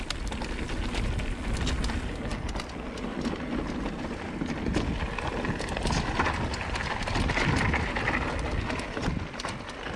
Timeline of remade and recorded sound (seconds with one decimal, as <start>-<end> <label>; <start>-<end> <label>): 0.0-10.0 recorded

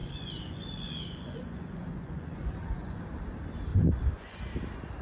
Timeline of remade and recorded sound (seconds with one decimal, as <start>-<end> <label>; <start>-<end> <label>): 0.0-3.0 remade; 3.0-3.7 recorded; 3.7-4.4 remade; 4.4-5.0 recorded